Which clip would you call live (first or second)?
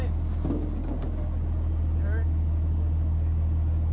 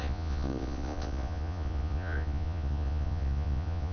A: first